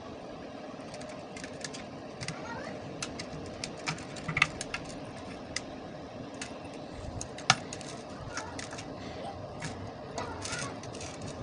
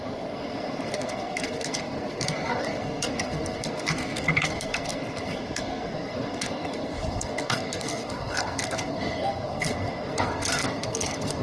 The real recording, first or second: first